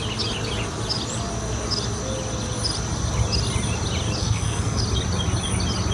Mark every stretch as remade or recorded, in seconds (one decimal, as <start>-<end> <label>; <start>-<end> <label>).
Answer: 0.0-4.2 recorded; 4.2-4.8 remade; 4.8-5.9 recorded